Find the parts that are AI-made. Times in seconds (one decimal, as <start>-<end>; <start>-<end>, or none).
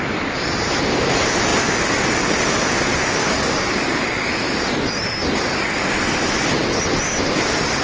3.2-3.8